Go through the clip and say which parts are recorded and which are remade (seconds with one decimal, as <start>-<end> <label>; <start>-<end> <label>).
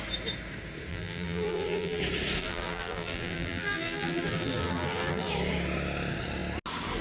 0.0-0.9 recorded; 0.9-2.0 remade; 2.0-2.4 recorded; 2.4-5.3 remade; 5.3-7.0 recorded